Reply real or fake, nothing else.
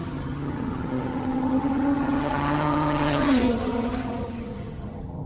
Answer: fake